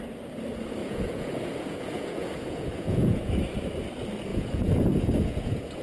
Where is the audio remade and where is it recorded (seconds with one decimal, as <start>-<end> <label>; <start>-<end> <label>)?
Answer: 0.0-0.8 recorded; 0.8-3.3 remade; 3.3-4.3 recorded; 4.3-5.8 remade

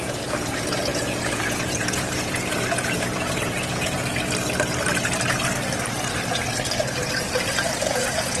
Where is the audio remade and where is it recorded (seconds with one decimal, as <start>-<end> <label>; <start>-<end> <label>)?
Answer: 0.0-4.1 remade; 4.1-7.8 recorded; 7.8-8.4 remade

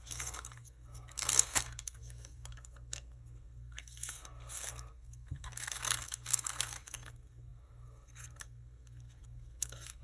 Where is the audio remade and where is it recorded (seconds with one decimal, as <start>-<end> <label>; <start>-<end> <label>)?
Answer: 0.0-10.0 remade

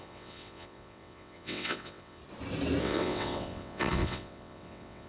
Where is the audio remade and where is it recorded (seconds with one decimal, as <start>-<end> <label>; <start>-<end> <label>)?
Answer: 0.0-2.2 remade; 2.2-2.8 recorded; 2.8-5.1 remade